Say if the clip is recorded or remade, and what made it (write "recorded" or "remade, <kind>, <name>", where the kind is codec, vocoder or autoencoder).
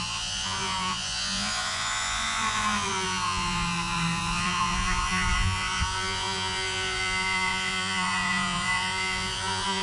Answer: remade, vocoder, Vocos